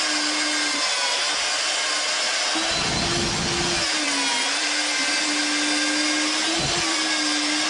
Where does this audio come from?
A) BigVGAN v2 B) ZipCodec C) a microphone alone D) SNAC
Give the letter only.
C